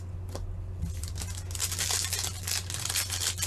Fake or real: real